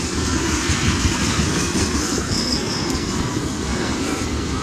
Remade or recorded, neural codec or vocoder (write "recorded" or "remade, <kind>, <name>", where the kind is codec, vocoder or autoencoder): remade, codec, SNAC